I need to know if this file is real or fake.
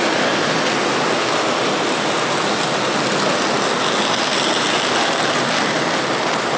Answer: real